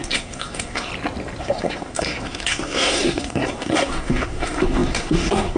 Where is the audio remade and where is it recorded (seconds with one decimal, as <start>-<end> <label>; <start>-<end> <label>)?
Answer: 0.0-0.9 remade; 0.9-1.4 recorded; 1.4-5.6 remade